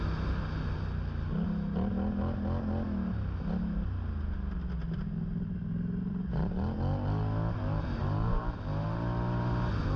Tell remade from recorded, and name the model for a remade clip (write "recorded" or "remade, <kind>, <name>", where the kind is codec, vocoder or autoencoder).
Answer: recorded